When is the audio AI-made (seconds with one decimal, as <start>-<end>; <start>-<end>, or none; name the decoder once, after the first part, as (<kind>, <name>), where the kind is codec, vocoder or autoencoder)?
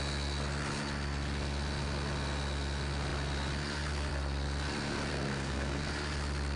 5.1-5.9 (codec, SNAC)